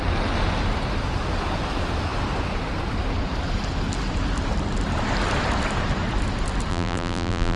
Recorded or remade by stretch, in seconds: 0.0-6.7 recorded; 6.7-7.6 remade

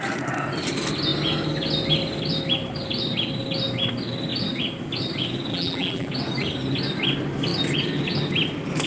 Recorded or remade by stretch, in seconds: 0.0-5.5 recorded; 5.5-6.1 remade; 6.1-8.9 recorded

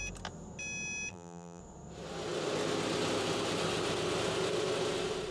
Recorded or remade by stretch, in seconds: 0.0-1.1 recorded; 1.1-1.6 remade; 1.6-5.3 recorded

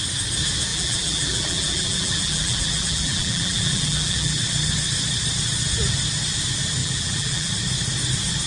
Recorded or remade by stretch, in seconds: 0.0-0.7 recorded; 0.7-4.4 remade; 4.4-6.8 recorded; 6.8-7.5 remade; 7.5-8.5 recorded

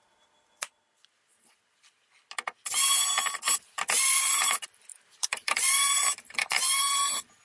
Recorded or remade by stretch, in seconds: 0.0-3.6 recorded; 3.6-7.4 remade

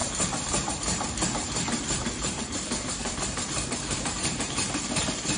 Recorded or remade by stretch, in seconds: 0.0-5.4 remade

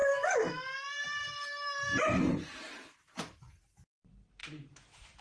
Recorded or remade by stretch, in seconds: 0.0-1.2 recorded; 1.2-3.2 remade; 3.2-4.4 recorded; 4.4-5.2 remade